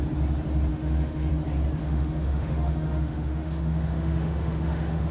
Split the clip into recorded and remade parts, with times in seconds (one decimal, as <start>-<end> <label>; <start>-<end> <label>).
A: 0.0-0.7 recorded; 0.7-1.3 remade; 1.3-1.8 recorded; 1.8-5.1 remade